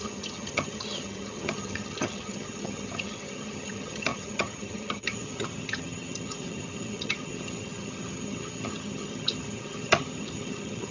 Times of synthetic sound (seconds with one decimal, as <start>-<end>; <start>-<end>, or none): 0.0-10.9